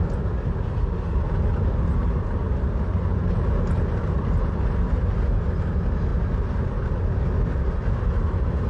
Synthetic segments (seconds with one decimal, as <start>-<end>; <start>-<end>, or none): none